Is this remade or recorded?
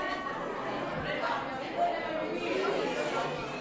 recorded